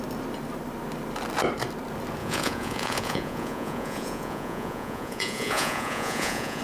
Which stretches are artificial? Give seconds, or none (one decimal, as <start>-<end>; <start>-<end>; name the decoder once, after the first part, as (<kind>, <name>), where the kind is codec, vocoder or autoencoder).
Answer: 2.2-6.6 (vocoder, Vocos)